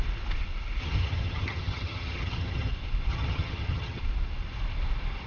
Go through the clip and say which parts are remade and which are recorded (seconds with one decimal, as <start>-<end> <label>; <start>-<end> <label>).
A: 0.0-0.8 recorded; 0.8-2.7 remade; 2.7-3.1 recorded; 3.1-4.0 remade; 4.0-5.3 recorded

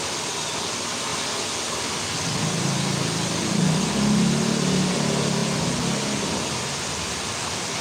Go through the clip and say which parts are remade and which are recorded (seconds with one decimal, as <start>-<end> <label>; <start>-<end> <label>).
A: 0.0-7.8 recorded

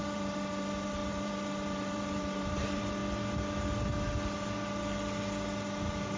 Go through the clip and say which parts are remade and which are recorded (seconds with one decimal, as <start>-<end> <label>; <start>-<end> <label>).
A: 0.0-3.0 remade; 3.0-6.2 recorded

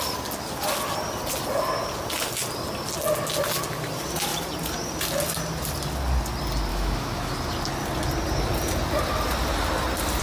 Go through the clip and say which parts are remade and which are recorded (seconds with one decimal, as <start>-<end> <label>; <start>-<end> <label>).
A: 0.0-6.7 recorded; 6.7-7.3 remade; 7.3-10.2 recorded